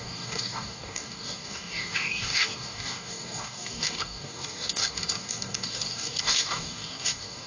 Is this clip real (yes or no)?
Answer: no